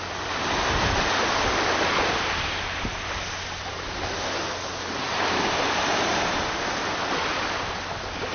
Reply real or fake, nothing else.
real